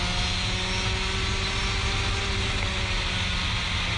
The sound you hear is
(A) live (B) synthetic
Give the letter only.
A